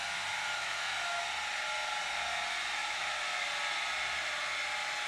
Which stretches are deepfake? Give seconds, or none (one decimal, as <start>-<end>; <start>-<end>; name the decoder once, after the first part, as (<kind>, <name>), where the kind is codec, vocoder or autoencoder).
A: 0.4-1.2 (autoencoder, DAC-VAE); 2.8-3.4